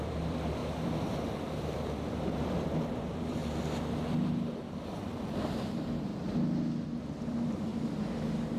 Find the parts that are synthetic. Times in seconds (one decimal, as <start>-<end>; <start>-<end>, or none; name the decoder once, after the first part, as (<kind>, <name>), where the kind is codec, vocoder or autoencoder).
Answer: 0.0-0.6 (vocoder, BigVGAN v2); 1.4-3.4; 5.4-6.1; 7.0-7.7